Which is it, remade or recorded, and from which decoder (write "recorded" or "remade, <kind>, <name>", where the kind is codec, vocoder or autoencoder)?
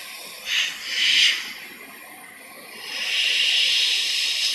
recorded